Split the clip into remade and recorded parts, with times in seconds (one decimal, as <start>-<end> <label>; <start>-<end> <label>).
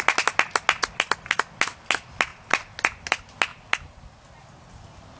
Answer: 0.0-5.2 recorded